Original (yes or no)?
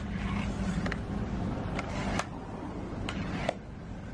yes